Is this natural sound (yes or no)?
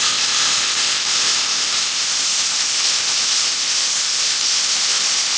no